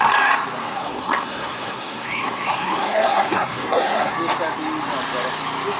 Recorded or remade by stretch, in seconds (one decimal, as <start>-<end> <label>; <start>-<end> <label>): 0.0-0.6 recorded; 0.6-4.1 remade; 4.1-5.8 recorded